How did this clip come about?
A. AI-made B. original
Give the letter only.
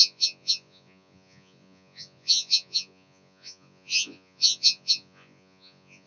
A